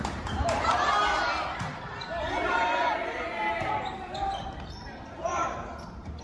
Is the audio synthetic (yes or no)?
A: yes